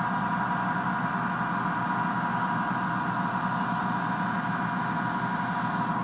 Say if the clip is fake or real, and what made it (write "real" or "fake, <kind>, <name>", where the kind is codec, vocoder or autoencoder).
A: real